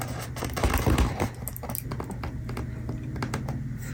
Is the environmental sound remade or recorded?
recorded